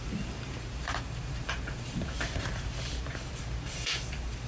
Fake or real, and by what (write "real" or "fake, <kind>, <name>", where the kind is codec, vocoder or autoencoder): fake, vocoder, BigVGAN v2